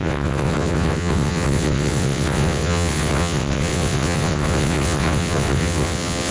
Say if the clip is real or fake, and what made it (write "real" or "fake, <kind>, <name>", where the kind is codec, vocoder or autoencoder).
fake, vocoder, WaveNeXt